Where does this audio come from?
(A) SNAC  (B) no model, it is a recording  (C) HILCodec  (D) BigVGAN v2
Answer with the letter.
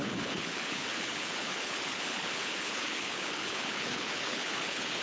C